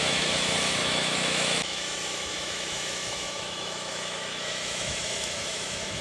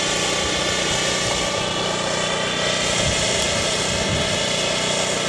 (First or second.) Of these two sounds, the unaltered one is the second